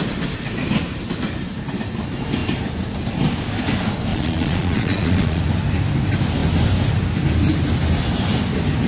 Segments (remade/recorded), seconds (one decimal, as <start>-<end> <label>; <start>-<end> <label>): 0.0-4.1 recorded; 4.1-5.4 remade; 5.4-8.9 recorded